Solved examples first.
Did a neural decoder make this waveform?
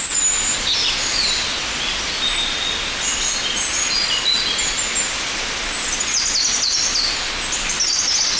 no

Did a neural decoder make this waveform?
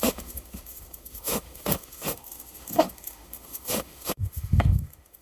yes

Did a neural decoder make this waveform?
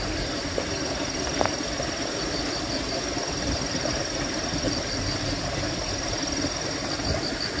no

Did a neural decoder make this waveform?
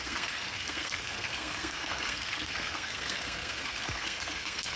yes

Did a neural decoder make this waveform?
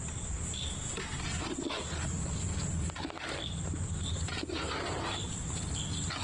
no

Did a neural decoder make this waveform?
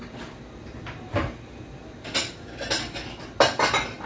no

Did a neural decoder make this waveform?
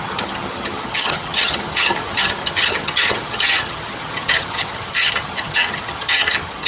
yes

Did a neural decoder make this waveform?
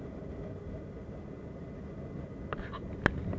no